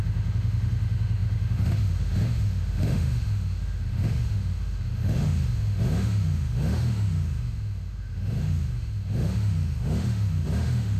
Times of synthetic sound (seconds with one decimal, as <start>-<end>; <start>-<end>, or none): 0.0-11.0